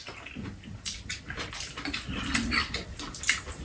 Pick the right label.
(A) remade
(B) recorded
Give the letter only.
B